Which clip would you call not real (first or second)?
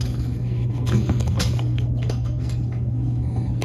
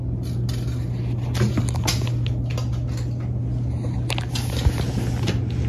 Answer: first